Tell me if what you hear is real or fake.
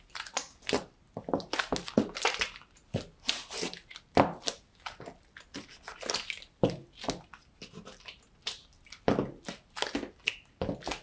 real